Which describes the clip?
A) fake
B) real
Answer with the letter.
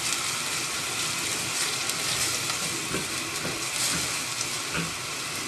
B